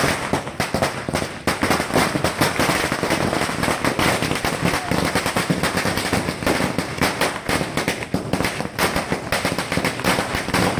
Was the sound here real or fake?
real